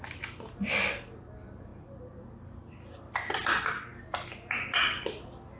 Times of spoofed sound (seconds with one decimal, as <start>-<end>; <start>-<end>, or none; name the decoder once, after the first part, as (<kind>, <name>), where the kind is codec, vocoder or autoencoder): none